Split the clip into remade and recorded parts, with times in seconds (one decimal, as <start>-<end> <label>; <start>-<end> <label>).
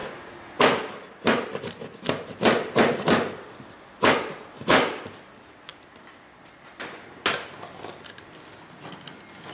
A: 0.0-9.5 recorded